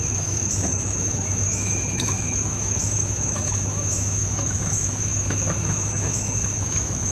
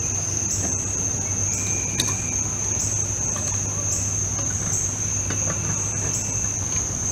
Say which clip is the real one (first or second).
second